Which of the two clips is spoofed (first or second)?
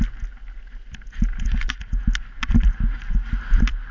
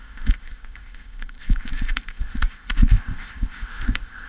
second